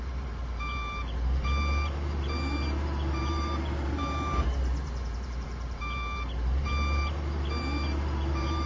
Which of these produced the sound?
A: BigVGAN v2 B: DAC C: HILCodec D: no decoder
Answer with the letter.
A